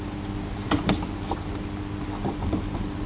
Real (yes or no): yes